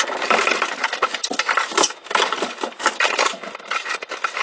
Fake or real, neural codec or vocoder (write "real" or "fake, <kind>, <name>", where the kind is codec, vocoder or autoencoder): real